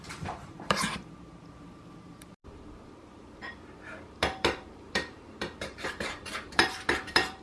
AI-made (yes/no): yes